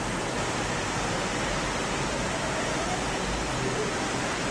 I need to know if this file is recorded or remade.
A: recorded